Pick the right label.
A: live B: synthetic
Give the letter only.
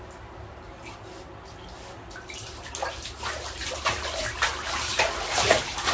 A